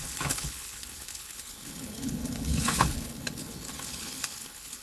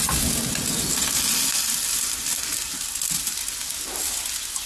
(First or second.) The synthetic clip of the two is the first